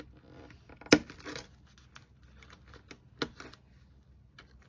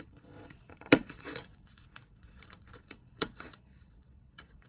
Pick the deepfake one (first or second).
second